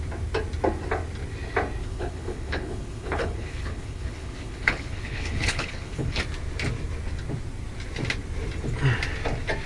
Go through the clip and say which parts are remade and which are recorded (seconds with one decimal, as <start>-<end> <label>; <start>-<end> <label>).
0.0-1.8 recorded; 1.8-6.2 remade; 6.2-9.7 recorded